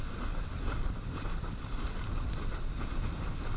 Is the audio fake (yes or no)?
yes